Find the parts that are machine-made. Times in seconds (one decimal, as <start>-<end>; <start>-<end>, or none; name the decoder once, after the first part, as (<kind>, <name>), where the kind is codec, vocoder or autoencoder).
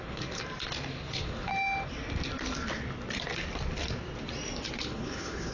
0.0-0.4 (codec, HILCodec); 1.1-1.5; 4.8-5.5